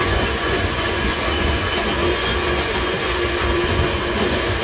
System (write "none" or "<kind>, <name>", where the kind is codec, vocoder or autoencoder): vocoder, Vocos